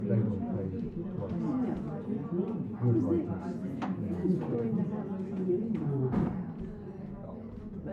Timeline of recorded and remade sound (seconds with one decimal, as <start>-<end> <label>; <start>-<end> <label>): 0.0-3.5 recorded; 3.5-4.3 remade; 4.3-7.9 recorded